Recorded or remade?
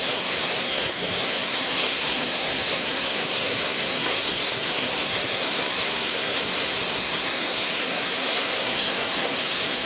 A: remade